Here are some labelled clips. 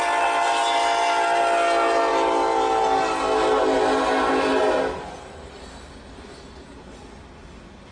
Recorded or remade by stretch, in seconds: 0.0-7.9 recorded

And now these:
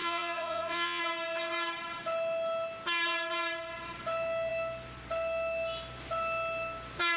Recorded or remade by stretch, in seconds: 0.0-1.0 remade; 1.0-7.2 recorded

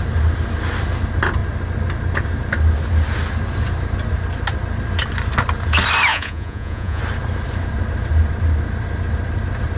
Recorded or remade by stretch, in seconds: 0.0-6.1 recorded; 6.1-7.0 remade; 7.0-9.8 recorded

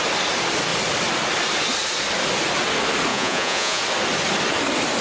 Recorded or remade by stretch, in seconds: 0.0-3.1 recorded; 3.1-3.8 remade; 3.8-5.0 recorded

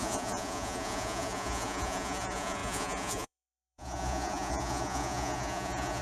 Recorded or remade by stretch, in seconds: 0.0-6.0 remade

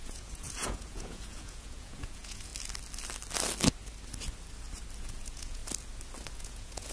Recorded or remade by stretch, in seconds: 0.0-2.5 remade; 2.5-5.0 recorded; 5.0-5.6 remade; 5.6-6.3 recorded; 6.3-6.9 remade

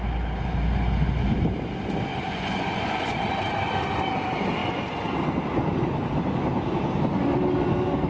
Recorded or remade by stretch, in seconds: 0.0-2.1 recorded; 2.1-3.2 remade; 3.2-8.1 recorded